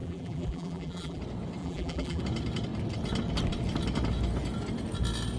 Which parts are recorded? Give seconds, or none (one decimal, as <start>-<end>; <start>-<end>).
1.2-1.6; 2.2-5.4